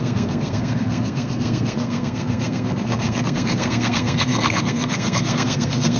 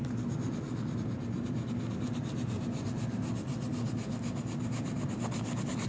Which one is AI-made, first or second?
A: first